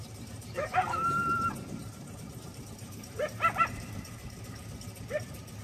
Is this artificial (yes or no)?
yes